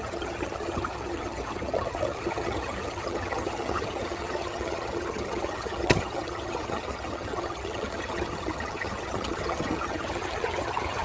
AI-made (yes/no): yes